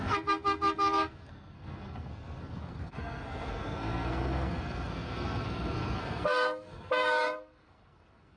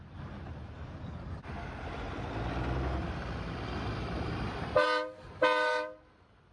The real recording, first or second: second